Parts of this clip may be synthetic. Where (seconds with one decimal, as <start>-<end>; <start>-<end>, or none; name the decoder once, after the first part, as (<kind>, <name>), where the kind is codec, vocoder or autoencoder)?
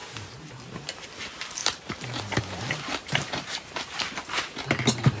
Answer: 0.0-0.5 (vocoder, BigVGAN v2); 1.6-2.2; 3.0-4.1